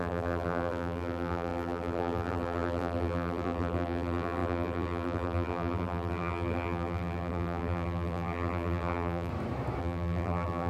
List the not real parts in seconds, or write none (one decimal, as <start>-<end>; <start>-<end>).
0.0-9.3; 9.8-10.7